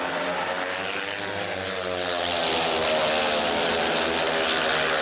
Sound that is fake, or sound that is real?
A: real